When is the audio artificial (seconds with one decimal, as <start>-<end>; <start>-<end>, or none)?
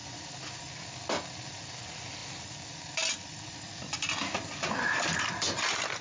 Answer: none